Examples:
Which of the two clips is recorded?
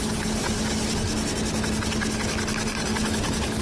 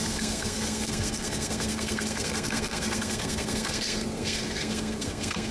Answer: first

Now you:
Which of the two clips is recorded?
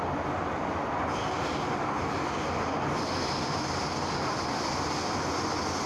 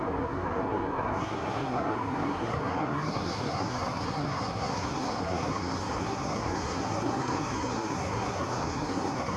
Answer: first